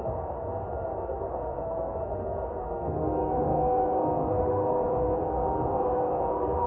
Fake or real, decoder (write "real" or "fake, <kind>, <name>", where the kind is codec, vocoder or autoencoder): fake, autoencoder, DAC-VAE